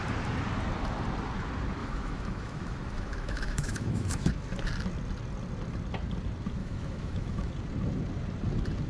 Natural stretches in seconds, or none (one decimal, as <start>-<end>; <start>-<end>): 0.0-1.8; 4.3-6.6; 7.5-8.9